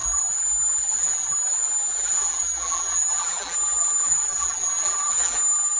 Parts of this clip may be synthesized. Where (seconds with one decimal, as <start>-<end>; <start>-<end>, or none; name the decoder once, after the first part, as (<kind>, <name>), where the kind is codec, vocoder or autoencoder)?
0.0-5.8 (vocoder, BigVGAN v2)

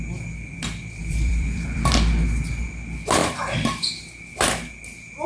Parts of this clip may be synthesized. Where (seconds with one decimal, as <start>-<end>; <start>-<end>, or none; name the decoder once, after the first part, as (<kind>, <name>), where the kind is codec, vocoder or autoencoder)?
1.0-1.9 (vocoder, BigVGAN v2)

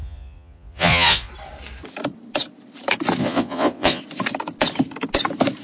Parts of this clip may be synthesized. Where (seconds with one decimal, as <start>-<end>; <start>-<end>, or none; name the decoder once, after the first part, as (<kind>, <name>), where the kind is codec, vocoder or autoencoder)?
0.0-1.3 (vocoder, Vocos); 3.2-4.0